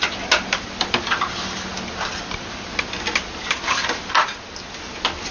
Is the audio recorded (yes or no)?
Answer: yes